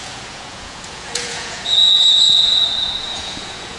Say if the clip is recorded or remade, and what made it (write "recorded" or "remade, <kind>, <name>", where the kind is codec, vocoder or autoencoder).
remade, vocoder, Vocos